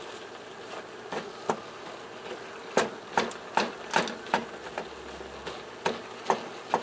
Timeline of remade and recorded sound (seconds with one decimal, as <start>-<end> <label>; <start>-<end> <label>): 0.0-6.8 recorded